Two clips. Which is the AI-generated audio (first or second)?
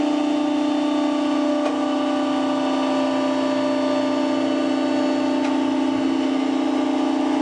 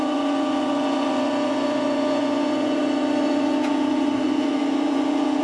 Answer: second